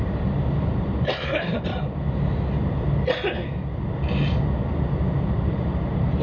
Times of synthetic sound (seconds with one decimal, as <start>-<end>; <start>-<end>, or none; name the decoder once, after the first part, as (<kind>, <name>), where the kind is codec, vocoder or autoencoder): 0.0-1.7 (vocoder, BigVGAN v2); 5.4-6.2